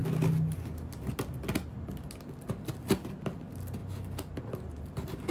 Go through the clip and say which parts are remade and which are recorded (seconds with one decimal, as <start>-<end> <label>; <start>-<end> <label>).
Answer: 0.0-5.3 recorded